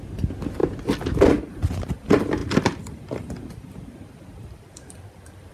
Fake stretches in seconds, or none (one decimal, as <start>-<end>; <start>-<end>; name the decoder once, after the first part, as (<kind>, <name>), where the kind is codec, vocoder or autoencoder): 0.0-0.6 (vocoder, BigVGAN v2); 1.5-5.5